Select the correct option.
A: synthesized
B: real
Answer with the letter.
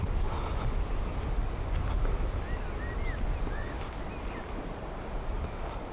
B